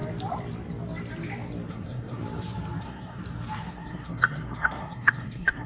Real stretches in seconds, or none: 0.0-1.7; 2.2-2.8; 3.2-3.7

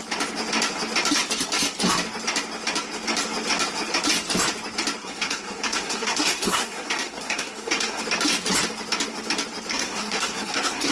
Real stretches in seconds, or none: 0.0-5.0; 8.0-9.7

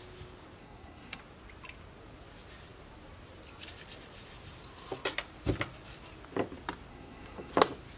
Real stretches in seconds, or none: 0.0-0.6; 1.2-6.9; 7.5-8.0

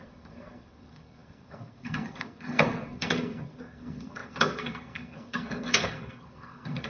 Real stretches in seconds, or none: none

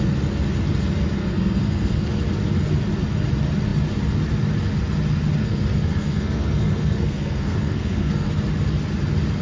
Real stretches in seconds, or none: 0.0-1.2; 2.1-5.4; 8.3-9.4

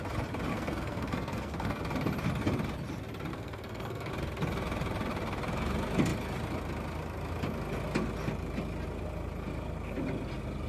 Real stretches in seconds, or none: 0.0-0.5; 1.8-3.3; 4.1-10.7

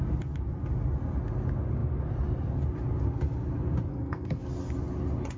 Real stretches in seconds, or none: 0.0-3.9; 4.4-5.4

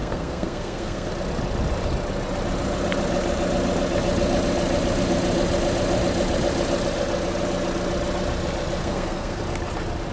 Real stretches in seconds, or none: 1.1-8.8; 9.4-10.1